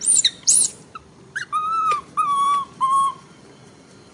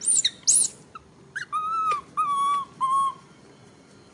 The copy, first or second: first